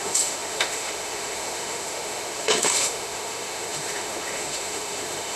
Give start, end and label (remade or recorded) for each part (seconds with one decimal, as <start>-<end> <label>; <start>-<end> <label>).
0.0-5.4 remade